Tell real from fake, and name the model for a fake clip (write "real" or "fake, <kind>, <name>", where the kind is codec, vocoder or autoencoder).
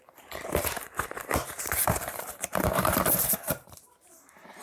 fake, vocoder, BigVGAN v2